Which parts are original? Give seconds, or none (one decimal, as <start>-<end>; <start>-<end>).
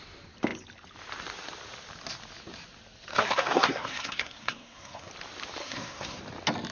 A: 0.0-3.1; 5.1-5.6; 6.2-6.7